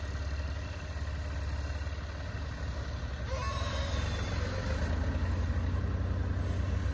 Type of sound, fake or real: real